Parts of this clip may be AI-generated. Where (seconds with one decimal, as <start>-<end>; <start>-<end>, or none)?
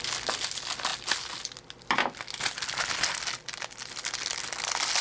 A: none